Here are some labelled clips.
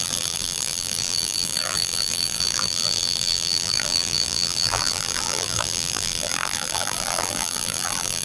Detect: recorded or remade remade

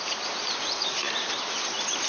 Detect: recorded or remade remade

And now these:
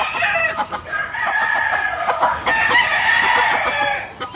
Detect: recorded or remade remade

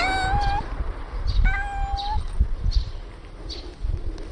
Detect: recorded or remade recorded